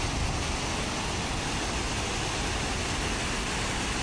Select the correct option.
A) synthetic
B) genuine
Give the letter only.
B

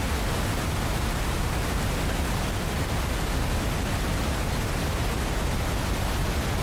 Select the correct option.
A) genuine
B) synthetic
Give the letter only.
A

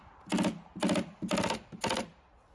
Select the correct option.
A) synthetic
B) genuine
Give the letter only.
B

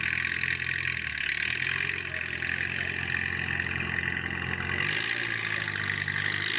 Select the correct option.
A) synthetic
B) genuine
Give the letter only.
B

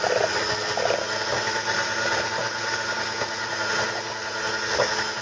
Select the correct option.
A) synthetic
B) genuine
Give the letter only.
B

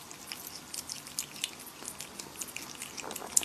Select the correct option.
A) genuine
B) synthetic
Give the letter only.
A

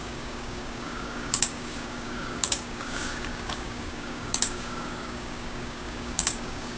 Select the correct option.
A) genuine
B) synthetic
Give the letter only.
B